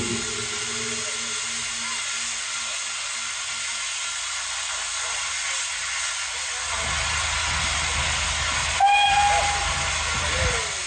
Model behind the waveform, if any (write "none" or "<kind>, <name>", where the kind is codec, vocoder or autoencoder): none